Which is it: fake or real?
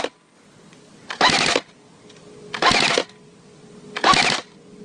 real